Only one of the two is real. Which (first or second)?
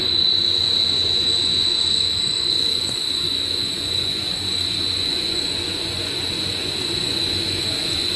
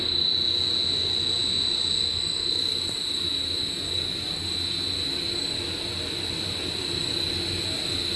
second